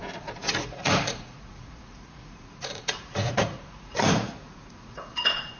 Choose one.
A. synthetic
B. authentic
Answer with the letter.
A